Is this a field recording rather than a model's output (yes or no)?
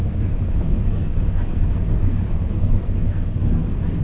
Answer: no